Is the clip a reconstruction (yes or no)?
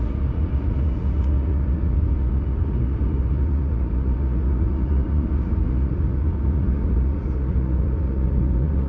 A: yes